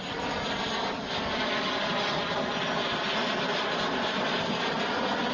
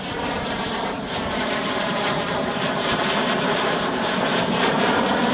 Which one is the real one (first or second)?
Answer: first